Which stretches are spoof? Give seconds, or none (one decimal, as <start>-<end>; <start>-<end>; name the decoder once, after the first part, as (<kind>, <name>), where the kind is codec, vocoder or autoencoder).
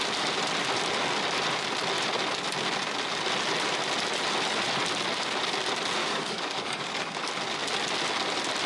6.0-7.3 (codec, DAC)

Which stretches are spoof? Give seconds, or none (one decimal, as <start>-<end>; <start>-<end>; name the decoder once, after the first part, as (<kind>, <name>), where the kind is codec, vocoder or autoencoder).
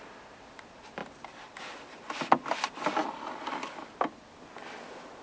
none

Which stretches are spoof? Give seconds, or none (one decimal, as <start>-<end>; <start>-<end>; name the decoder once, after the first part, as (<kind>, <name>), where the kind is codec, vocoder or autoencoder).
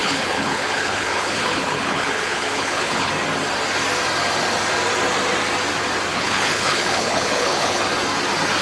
0.0-3.1 (codec, HILCodec); 6.1-7.8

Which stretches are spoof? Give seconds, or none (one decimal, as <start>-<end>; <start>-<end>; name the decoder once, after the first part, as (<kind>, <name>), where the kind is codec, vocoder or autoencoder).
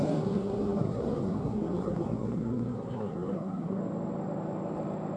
0.0-3.8 (codec, SNAC)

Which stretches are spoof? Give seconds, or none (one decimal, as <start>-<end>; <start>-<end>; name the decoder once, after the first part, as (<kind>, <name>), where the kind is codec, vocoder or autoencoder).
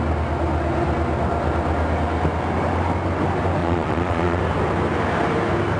3.6-4.4 (vocoder, Vocos)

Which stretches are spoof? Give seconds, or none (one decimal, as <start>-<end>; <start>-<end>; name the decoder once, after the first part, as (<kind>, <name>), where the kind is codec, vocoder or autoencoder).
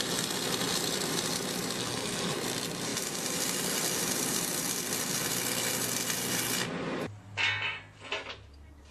1.8-2.4 (codec, SNAC)